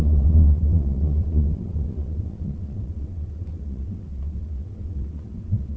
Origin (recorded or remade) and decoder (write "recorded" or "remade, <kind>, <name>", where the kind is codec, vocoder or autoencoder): remade, vocoder, WaveNeXt